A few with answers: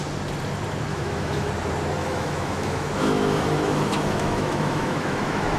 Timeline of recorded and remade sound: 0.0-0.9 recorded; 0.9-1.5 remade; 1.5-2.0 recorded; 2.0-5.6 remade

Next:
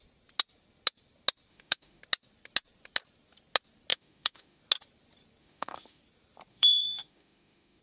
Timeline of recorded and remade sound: 0.0-1.5 recorded; 1.5-2.0 remade; 2.0-3.9 recorded; 3.9-4.6 remade; 4.6-5.4 recorded; 5.4-6.0 remade; 6.0-6.5 recorded; 6.5-7.8 remade